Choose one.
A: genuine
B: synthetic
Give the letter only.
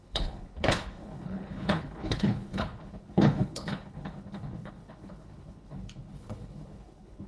B